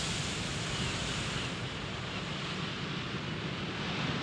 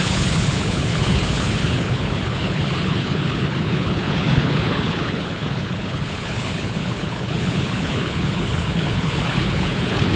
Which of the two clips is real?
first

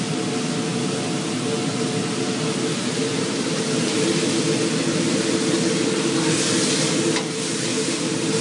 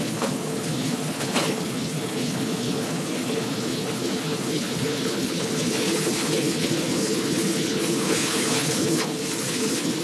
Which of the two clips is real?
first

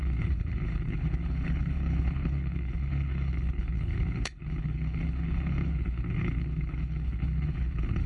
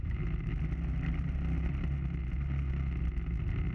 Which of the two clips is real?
second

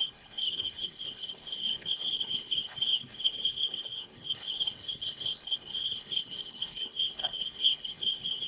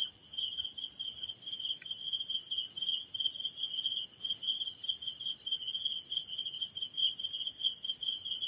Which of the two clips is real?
second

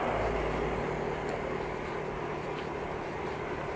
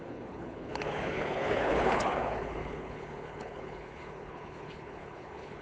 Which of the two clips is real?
first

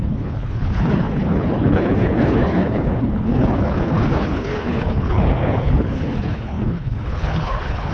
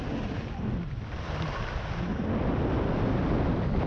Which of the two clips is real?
second